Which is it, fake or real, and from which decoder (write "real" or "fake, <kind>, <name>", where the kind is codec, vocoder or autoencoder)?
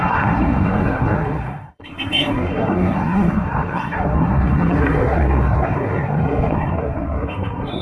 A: fake, codec, SNAC